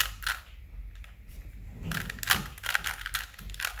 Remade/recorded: recorded